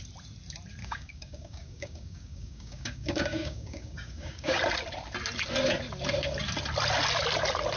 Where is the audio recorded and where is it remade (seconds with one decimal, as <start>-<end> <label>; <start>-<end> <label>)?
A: 0.0-0.8 recorded; 0.8-4.6 remade; 4.6-7.8 recorded